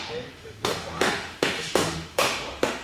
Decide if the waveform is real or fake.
fake